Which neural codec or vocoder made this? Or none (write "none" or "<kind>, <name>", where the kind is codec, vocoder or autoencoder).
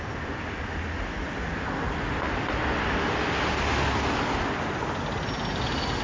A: none